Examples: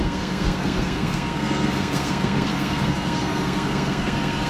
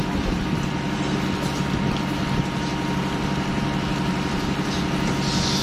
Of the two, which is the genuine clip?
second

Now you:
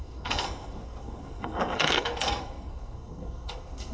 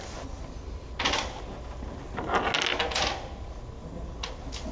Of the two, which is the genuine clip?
second